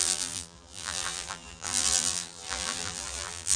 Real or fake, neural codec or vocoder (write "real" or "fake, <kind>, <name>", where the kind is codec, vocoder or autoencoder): fake, vocoder, BigVGAN v2